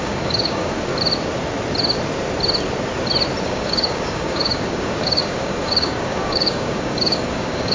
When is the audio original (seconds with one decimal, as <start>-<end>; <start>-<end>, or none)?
0.9-3.4